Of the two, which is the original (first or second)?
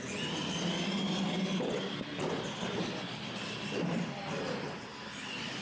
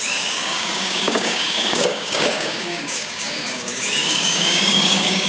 first